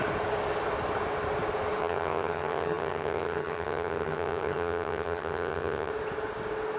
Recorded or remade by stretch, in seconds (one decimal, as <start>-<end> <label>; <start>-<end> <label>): 0.0-1.8 recorded; 1.8-5.9 remade; 5.9-6.8 recorded